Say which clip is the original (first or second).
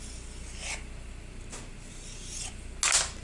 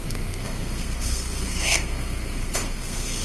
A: first